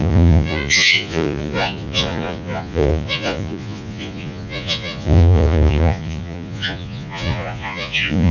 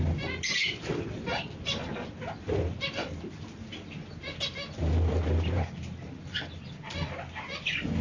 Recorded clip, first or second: second